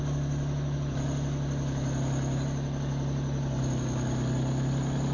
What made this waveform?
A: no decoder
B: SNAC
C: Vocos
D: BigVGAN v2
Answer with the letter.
A